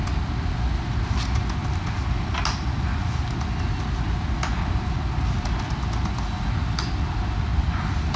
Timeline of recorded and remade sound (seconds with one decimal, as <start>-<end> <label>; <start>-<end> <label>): 0.0-7.5 recorded; 7.5-8.2 remade